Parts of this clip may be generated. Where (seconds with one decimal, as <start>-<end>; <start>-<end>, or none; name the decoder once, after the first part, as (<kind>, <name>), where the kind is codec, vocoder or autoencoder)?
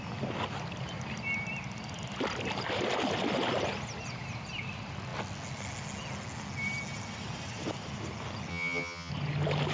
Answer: 8.5-9.1 (vocoder, HiFi-GAN)